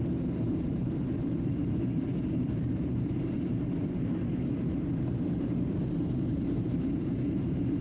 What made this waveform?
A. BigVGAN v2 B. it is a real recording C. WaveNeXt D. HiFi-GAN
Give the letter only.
A